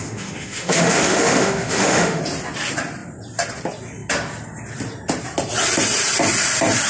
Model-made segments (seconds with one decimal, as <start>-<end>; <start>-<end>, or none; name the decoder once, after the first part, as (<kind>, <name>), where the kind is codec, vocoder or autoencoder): 0.0-2.2 (autoencoder, DAC-VAE)